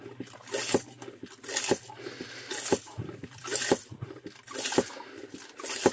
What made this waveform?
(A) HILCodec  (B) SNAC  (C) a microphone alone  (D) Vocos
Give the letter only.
C